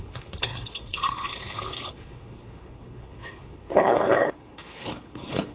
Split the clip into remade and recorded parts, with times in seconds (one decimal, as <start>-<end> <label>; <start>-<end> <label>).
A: 0.0-5.5 remade